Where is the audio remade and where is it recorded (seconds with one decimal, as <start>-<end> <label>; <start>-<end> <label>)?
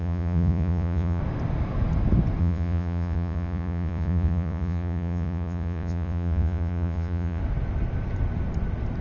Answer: 0.0-1.2 remade; 1.2-2.4 recorded; 2.4-7.4 remade; 7.4-9.0 recorded